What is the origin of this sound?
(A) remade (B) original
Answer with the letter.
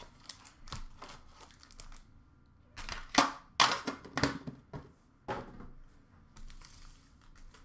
B